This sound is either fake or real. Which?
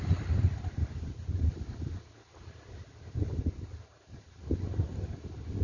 real